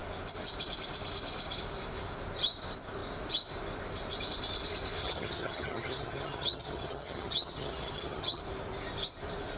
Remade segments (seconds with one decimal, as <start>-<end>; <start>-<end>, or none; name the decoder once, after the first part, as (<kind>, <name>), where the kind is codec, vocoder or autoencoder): 5.0-8.4 (vocoder, HiFi-GAN)

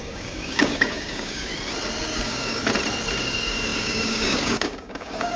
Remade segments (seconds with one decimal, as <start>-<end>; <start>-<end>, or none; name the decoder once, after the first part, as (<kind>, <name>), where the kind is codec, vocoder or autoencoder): 0.0-1.5 (codec, DAC); 2.0-2.6; 3.2-5.4

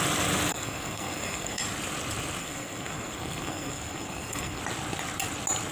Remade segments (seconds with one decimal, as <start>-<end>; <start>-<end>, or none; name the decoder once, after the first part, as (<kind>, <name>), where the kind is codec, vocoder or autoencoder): 0.5-1.6 (codec, SNAC); 2.4-4.6

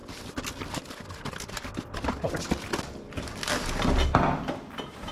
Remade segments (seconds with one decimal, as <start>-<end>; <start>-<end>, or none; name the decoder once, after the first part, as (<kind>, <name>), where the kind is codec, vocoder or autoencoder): none